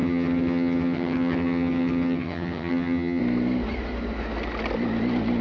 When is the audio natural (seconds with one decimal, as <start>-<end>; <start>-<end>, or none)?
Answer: 3.2-5.4